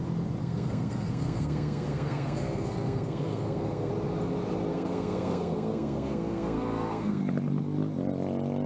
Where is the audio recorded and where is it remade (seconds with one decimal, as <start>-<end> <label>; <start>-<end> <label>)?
0.0-0.4 recorded; 0.4-3.9 remade; 3.9-4.7 recorded; 4.7-7.2 remade; 7.2-8.7 recorded